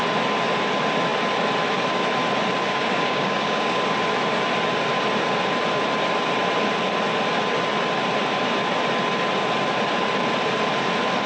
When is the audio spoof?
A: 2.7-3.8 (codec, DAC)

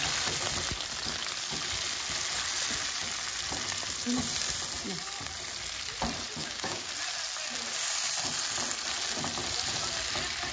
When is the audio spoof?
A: 6.4-6.9 (codec, DAC)

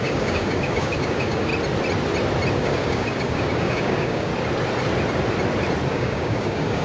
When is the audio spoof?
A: 0.0-1.5 (codec, DAC); 2.5-4.3; 5.9-6.8

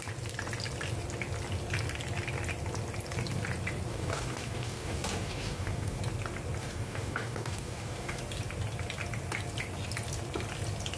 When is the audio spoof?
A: 3.9-6.0 (codec, DAC); 6.6-8.2

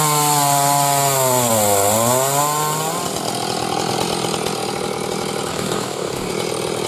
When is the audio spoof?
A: 5.5-6.3 (codec, DAC)